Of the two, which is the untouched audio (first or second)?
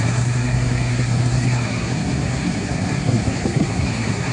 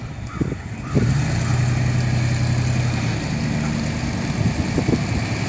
second